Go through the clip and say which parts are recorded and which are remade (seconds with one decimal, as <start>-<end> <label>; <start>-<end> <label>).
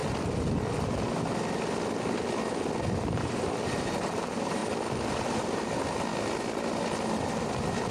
0.0-3.2 recorded; 3.2-4.6 remade; 4.6-5.1 recorded; 5.1-6.1 remade; 6.1-7.5 recorded; 7.5-7.9 remade